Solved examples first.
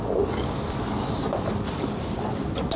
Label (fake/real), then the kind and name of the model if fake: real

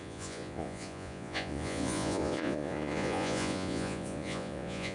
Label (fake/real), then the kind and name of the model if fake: fake, vocoder, Vocos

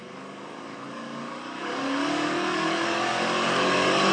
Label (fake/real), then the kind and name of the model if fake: fake, codec, DAC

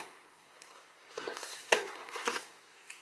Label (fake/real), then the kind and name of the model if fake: fake, codec, SNAC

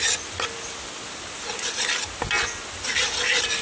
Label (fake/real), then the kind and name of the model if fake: real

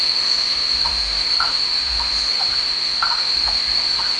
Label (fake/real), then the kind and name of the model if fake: fake, autoencoder, DAC-VAE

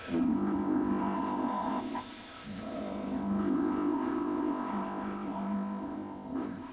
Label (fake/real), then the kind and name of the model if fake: fake, codec, ZipCodec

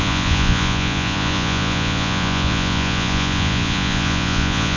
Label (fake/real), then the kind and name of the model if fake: fake, vocoder, Vocos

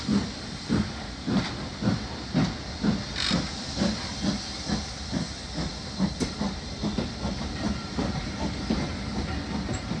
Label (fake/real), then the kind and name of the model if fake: real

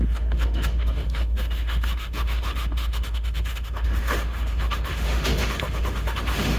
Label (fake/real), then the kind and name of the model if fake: fake, autoencoder, DAC-VAE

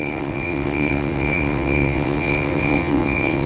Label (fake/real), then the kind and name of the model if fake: fake, vocoder, WaveNeXt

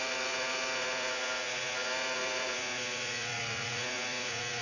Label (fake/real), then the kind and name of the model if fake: fake, vocoder, Vocos